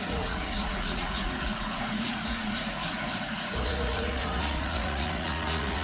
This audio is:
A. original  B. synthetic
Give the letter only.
B